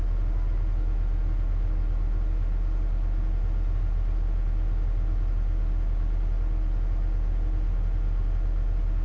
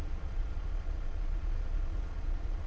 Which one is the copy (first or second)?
second